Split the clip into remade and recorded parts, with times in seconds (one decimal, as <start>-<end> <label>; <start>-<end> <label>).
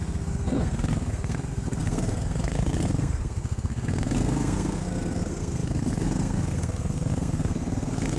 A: 0.0-8.2 remade